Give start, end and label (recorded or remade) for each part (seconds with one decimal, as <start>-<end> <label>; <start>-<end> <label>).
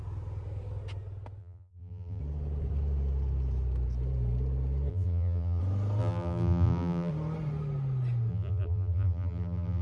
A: 0.0-1.4 recorded; 1.4-2.2 remade; 2.2-4.9 recorded; 4.9-5.6 remade; 5.6-6.0 recorded; 6.0-7.1 remade; 7.1-8.3 recorded; 8.3-9.8 remade